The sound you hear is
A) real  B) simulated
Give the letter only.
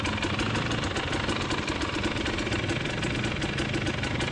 A